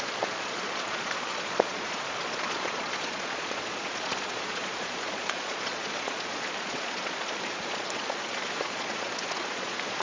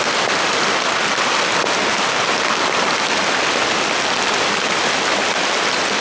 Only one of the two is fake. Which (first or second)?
first